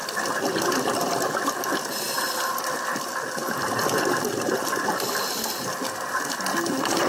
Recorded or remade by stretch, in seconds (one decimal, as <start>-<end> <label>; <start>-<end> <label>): 0.0-7.1 recorded